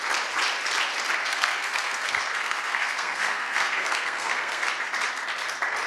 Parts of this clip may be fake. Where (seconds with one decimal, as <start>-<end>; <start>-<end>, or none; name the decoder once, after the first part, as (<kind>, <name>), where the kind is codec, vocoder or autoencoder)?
1.2-4.7 (codec, SNAC)